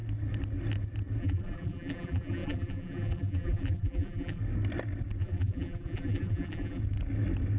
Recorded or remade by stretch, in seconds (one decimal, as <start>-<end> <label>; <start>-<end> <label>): 0.0-1.2 recorded; 1.2-4.4 remade; 4.4-5.2 recorded; 5.2-6.8 remade; 6.8-7.6 recorded